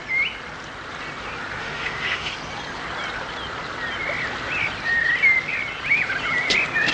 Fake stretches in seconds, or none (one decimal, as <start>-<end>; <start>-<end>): 1.6-2.3